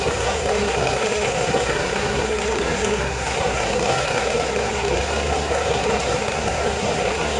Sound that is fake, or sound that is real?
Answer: fake